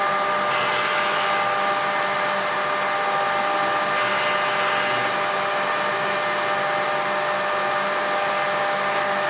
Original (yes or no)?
yes